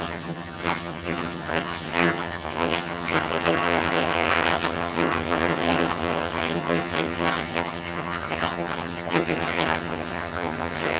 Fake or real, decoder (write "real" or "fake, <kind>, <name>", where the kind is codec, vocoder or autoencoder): fake, vocoder, HiFi-GAN